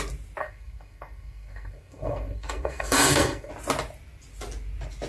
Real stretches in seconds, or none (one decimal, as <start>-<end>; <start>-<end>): 0.0-0.4; 3.5-5.1